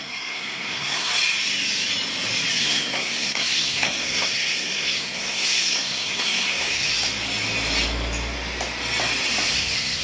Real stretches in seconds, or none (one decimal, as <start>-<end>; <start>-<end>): 1.1-2.6; 6.9-9.5

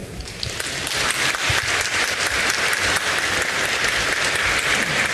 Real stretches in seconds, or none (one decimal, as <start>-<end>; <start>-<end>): 0.0-5.1